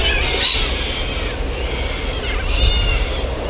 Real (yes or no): yes